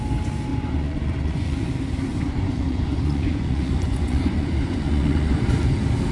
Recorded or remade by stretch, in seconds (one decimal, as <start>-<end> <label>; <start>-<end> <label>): 0.0-0.5 recorded; 0.5-1.7 remade; 1.7-2.1 recorded; 2.1-5.4 remade; 5.4-6.1 recorded